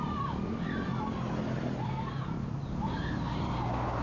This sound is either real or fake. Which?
real